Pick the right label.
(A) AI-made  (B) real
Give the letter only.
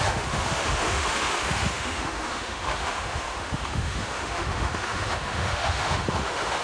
A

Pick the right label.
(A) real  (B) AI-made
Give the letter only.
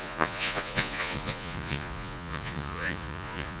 B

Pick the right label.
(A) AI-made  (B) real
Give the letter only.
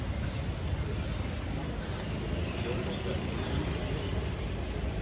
B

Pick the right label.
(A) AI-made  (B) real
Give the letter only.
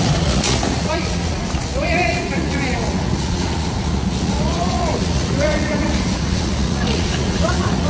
A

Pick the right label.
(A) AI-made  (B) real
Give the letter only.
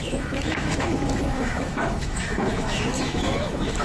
A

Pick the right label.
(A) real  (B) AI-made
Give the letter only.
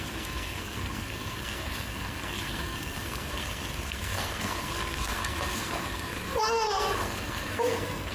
B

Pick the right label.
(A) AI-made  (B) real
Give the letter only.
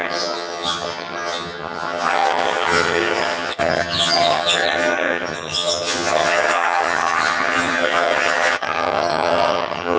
A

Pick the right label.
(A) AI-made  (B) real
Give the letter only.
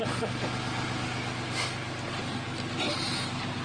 B